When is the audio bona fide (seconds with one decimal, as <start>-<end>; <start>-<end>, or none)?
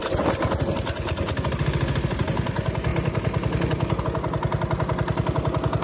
0.0-5.8